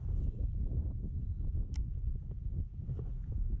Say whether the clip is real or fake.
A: real